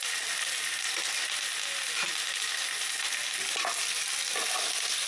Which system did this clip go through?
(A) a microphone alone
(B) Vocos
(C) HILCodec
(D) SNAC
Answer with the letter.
A